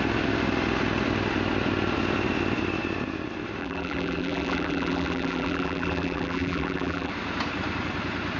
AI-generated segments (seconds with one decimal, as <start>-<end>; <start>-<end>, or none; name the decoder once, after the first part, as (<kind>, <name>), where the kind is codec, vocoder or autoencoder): 3.6-7.1 (vocoder, BigVGAN v2)